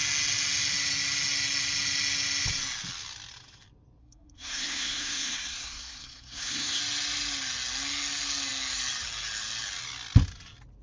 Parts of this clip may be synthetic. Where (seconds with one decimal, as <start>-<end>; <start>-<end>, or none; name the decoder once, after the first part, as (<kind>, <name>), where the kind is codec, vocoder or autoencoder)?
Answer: 4.0-6.8 (codec, SNAC)